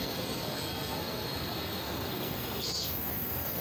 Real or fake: fake